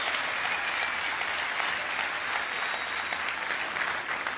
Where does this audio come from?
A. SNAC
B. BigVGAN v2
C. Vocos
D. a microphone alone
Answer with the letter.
D